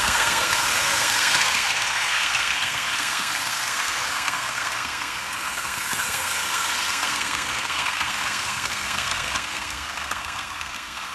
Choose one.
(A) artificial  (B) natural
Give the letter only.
A